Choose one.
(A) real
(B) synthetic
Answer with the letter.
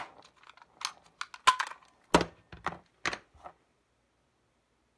A